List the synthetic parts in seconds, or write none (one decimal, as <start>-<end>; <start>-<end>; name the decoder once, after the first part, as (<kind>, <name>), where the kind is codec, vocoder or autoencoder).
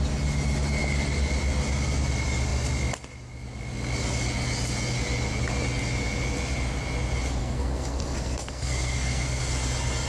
7.4-9.4 (codec, SNAC)